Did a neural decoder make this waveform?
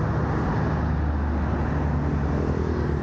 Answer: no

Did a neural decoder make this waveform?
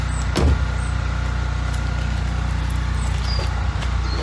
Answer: no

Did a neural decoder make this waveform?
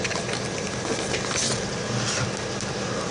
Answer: no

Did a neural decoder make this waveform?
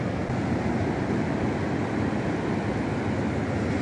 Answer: no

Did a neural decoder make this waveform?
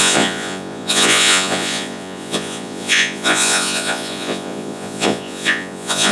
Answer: yes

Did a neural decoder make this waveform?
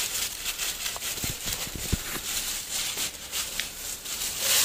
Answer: yes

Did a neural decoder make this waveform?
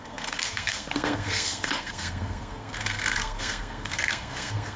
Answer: yes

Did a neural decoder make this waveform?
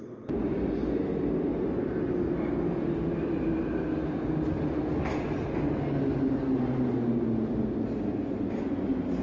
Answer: no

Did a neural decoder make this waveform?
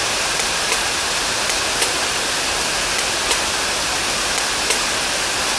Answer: no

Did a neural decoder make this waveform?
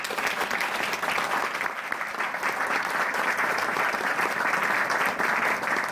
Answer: no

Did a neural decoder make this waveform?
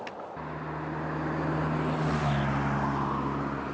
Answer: no